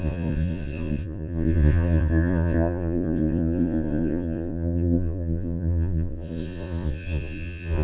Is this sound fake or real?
fake